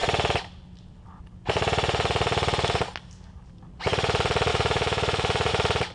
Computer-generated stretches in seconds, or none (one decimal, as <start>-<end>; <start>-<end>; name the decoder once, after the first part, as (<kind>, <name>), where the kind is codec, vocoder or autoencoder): 4.5-5.5 (autoencoder, DAC-VAE)